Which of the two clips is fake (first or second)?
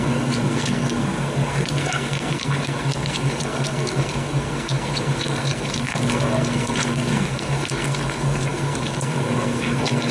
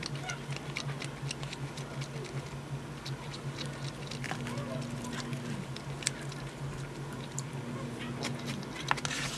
first